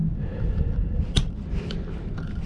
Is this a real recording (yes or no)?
yes